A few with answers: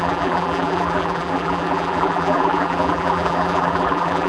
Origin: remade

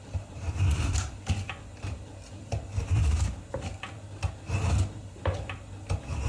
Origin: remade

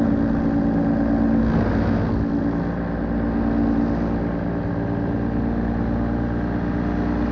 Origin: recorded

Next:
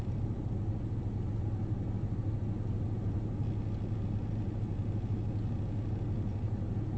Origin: recorded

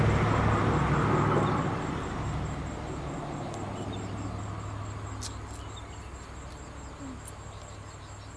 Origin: recorded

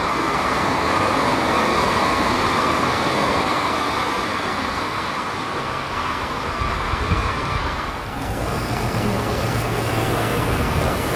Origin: remade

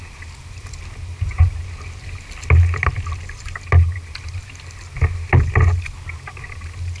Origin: recorded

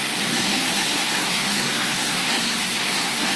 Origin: remade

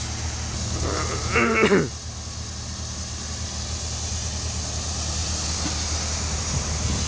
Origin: recorded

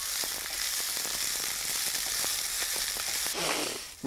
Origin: recorded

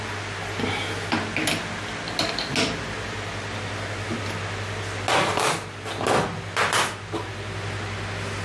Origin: recorded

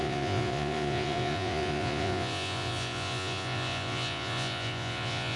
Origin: remade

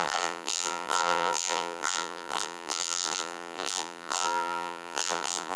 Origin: remade